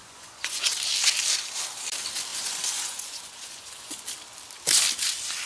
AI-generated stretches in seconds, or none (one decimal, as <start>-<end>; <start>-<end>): 0.0-0.7; 2.3-4.0